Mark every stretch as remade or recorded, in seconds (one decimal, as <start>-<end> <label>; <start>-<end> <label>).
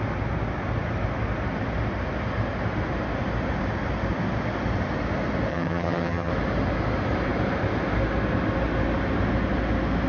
0.0-5.5 recorded; 5.5-6.3 remade; 6.3-10.1 recorded